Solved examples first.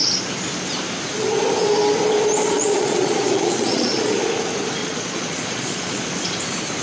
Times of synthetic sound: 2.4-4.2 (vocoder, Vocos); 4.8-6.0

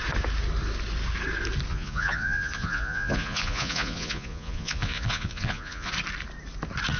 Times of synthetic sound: 1.7-5.9 (vocoder, Vocos)

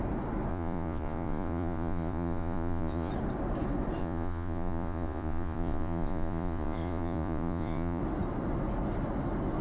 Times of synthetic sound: 0.5-3.1 (vocoder, Vocos); 4.0-8.0

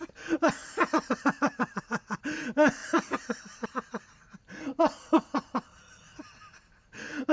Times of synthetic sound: 2.8-4.5 (vocoder, BigVGAN v2)

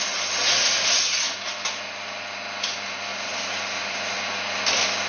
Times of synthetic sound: 3.1-4.2 (vocoder, BigVGAN v2)